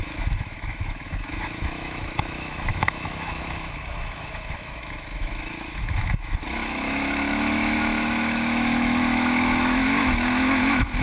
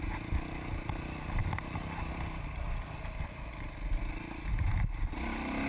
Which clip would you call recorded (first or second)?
second